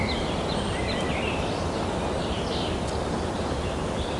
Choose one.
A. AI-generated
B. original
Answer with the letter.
B